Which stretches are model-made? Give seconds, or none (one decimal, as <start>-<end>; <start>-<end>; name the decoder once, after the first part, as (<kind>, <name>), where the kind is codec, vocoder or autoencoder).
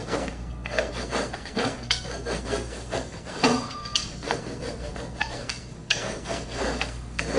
0.0-7.4 (codec, SNAC)